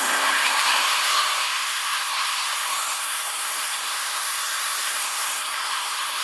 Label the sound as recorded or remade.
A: remade